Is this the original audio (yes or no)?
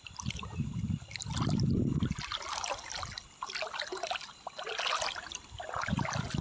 yes